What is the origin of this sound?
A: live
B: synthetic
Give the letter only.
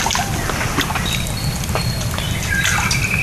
A